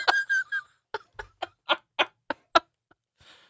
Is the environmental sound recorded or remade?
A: recorded